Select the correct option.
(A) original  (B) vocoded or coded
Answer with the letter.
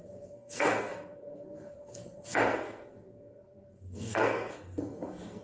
B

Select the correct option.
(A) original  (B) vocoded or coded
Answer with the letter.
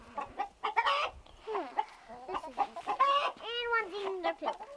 A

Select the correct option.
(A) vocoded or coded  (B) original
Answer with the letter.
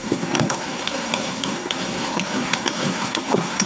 A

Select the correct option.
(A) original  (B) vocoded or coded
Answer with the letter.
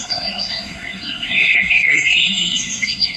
B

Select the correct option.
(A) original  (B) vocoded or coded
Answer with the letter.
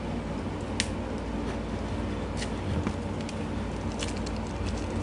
A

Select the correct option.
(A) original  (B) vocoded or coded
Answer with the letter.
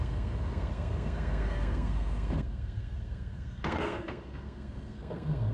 B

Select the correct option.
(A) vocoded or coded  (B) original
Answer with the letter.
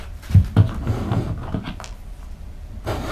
B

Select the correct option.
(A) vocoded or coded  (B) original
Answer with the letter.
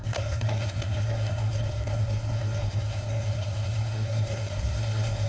A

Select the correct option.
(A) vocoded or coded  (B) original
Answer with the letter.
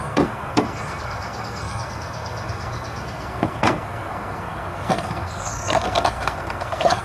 A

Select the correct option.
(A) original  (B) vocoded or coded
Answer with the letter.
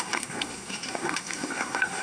B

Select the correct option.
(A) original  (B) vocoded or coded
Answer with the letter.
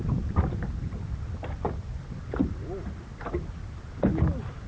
A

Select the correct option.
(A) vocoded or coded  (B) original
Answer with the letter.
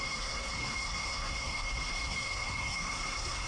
A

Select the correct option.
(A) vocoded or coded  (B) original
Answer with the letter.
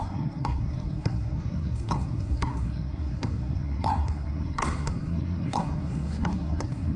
A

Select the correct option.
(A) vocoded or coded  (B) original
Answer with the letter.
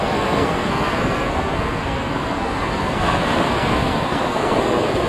A